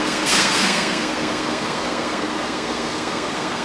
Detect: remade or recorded remade